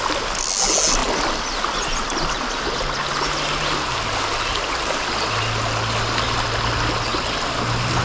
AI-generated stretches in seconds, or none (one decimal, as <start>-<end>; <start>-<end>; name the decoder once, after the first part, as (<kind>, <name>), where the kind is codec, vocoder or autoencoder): none